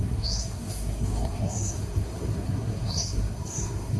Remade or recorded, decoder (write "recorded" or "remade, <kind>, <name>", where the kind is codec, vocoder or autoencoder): remade, codec, SNAC